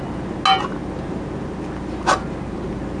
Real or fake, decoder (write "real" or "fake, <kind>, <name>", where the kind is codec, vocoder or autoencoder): real